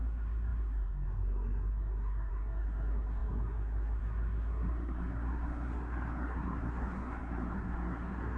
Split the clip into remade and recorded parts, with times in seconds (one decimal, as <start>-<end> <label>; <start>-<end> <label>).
0.0-8.4 remade